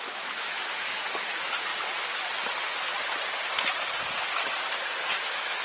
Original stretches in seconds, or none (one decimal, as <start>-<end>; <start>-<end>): 1.7-5.1